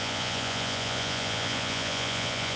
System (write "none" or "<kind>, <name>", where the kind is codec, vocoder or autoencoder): vocoder, Vocos